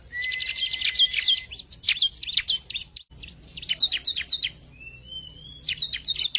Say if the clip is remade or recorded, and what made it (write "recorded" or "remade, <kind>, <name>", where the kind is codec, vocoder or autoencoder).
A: recorded